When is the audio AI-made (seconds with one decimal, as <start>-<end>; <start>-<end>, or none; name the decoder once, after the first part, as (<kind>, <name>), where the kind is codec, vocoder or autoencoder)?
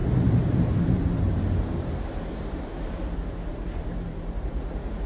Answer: 0.0-3.1 (vocoder, BigVGAN v2); 3.5-5.1